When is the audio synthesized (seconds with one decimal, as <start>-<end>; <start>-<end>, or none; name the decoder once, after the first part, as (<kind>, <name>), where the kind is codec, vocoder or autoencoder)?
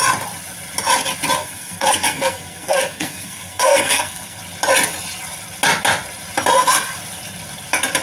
1.4-4.4 (codec, SNAC)